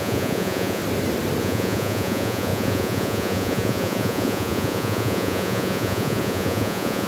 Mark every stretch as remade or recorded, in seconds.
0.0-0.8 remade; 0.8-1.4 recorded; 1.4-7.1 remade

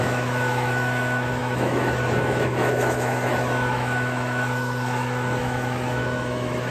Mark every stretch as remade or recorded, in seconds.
0.0-6.7 remade

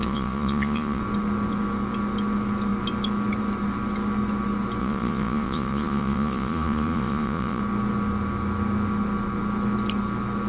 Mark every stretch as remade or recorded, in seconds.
0.0-1.0 remade; 1.0-4.8 recorded; 4.8-7.6 remade; 7.6-10.5 recorded

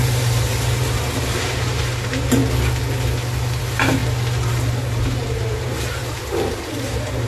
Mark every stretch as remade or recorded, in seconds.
0.0-2.4 remade; 2.4-3.6 recorded; 3.6-4.0 remade; 4.0-4.5 recorded; 4.5-6.0 remade; 6.0-6.6 recorded; 6.6-7.3 remade